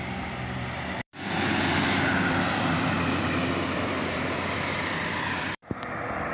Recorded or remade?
remade